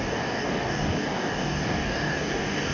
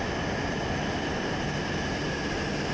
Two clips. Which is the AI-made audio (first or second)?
first